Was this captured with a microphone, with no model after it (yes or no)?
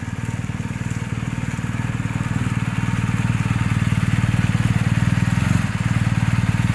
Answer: yes